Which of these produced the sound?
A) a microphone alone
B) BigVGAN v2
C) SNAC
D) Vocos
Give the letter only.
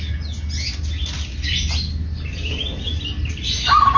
A